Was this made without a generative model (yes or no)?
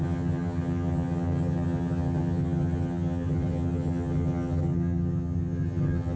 no